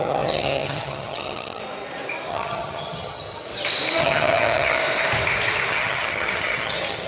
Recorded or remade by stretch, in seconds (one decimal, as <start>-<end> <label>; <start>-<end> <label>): 0.0-1.6 remade; 1.6-2.3 recorded; 2.3-3.5 remade; 3.5-4.0 recorded; 4.0-4.8 remade; 4.8-5.7 recorded; 5.7-7.1 remade